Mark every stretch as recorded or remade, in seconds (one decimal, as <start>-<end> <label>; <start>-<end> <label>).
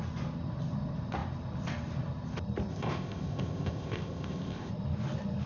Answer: 0.0-2.7 recorded; 2.7-4.7 remade; 4.7-5.5 recorded